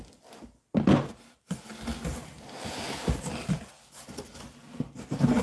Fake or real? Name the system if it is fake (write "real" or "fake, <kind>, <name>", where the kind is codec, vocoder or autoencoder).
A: real